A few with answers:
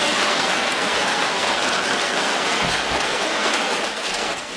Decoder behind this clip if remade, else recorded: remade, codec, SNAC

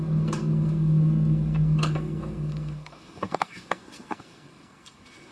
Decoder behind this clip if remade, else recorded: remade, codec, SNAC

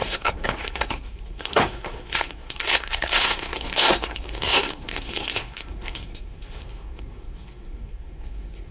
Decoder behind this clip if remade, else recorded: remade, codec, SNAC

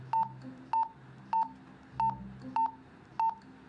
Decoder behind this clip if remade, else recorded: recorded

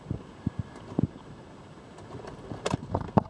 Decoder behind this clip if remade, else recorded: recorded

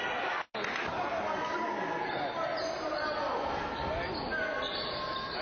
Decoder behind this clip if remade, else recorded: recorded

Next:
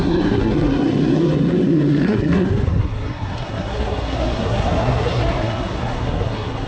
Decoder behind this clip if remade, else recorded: remade, codec, SNAC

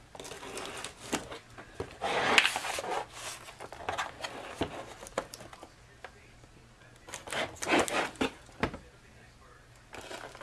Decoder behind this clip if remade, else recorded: recorded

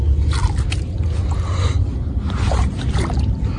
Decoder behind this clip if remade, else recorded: recorded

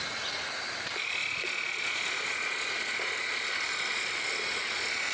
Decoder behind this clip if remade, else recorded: recorded